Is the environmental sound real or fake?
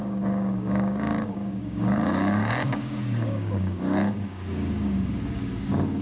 fake